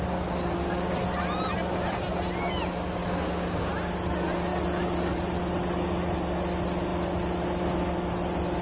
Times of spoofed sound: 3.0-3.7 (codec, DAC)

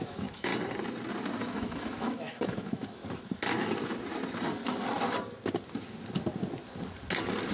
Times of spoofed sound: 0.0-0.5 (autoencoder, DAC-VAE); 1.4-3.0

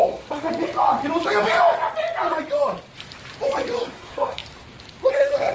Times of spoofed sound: 0.0-0.5 (codec, SNAC); 3.8-4.4; 5.1-5.5

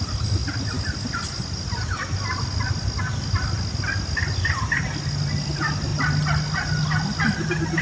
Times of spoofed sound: none

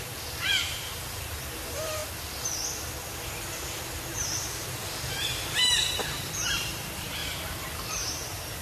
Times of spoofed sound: 0.0-2.0 (vocoder, BigVGAN v2); 4.0-7.2; 8.1-8.6

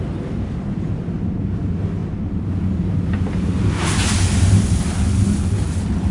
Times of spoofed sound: none

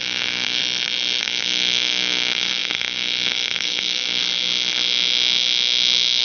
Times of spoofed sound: 0.0-0.6 (codec, DAC); 1.2-4.2

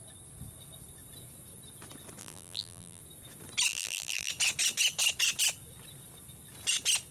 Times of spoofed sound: 2.2-3.0 (vocoder, BigVGAN v2); 3.7-4.3